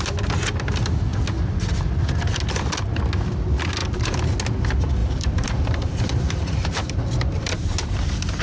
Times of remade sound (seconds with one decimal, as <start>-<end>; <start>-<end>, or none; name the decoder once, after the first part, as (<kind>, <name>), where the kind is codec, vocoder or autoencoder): 3.8-4.4 (vocoder, BigVGAN v2); 5.0-8.4